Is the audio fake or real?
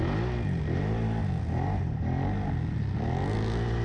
real